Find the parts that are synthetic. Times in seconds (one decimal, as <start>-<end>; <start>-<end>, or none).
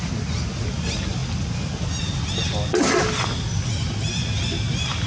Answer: none